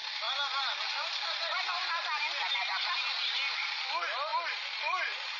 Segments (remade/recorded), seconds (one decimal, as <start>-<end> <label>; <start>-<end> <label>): 0.0-5.4 recorded